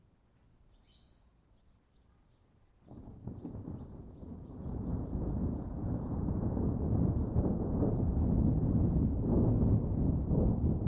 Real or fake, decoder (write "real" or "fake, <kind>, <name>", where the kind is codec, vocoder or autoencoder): fake, vocoder, Vocos